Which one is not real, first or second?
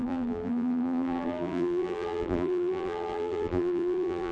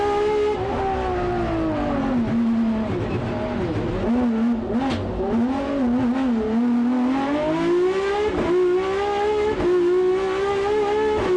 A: first